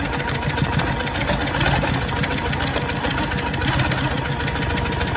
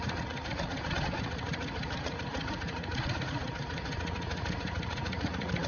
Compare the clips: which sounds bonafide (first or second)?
first